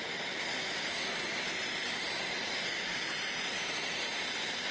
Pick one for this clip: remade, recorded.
recorded